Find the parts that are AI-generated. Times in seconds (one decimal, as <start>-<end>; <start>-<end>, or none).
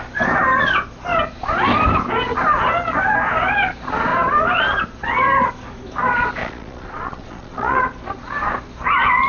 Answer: 6.4-7.8